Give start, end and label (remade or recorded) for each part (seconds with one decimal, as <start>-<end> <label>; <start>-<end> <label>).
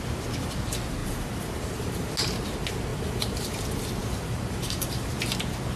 0.0-1.0 recorded; 1.0-2.1 remade; 2.1-2.9 recorded; 2.9-3.6 remade; 3.6-4.0 recorded; 4.0-5.1 remade; 5.1-5.8 recorded